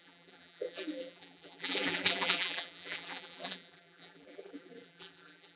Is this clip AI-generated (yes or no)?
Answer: yes